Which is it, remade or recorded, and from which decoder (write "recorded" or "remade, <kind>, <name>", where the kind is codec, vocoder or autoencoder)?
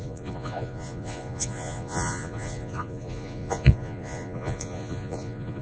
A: remade, vocoder, Vocos